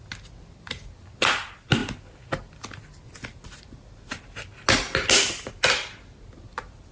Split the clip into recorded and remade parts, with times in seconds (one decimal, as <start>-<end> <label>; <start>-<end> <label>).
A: 0.0-6.9 recorded